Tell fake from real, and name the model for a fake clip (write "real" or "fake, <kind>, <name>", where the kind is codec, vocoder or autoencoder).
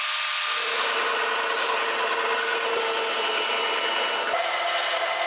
real